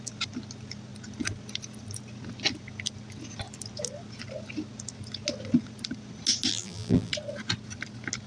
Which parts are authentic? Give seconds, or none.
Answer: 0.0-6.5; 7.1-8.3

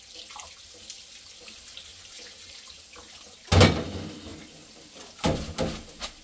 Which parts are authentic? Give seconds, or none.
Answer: 0.0-1.9; 2.8-6.2

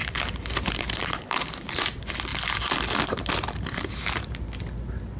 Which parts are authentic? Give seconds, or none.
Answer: 1.7-5.2

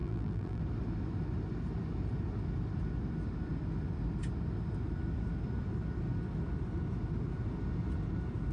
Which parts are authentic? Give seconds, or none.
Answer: 0.6-8.5

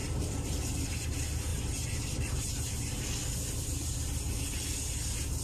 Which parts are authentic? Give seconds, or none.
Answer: 0.9-1.5; 3.0-5.4

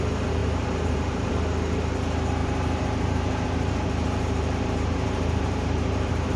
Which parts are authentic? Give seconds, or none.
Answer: 0.0-0.4; 1.3-2.4